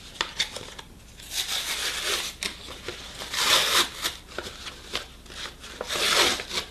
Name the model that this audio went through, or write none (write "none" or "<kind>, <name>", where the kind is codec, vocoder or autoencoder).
none